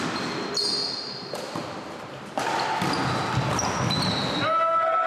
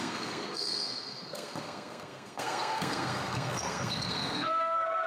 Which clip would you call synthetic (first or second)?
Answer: second